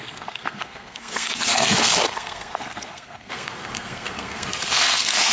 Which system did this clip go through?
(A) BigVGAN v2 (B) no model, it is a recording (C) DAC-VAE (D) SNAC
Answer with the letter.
D